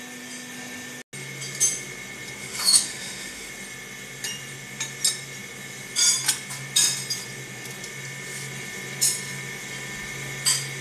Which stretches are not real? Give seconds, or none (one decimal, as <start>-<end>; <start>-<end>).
2.4-3.5